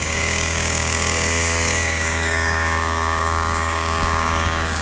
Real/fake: fake